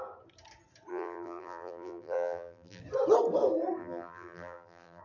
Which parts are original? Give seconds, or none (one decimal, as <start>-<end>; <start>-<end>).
0.0-0.9; 2.8-3.8